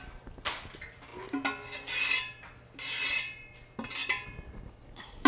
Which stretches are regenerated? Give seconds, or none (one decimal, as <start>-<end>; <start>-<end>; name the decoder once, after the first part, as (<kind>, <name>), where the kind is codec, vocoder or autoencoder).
none